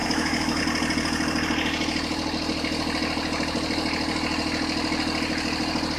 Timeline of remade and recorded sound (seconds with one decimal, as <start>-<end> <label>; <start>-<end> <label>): 0.0-0.6 remade; 0.6-6.0 recorded